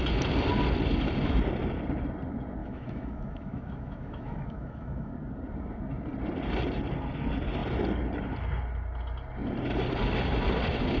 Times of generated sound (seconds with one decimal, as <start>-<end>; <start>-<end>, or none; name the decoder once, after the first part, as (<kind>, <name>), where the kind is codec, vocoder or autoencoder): 2.6-5.1 (autoencoder, DAC-VAE)